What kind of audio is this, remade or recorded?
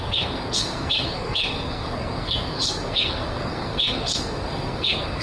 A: remade